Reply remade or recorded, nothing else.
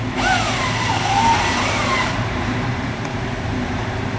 remade